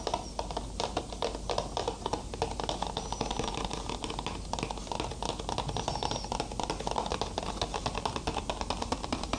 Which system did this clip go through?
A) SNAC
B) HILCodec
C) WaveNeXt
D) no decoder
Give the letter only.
D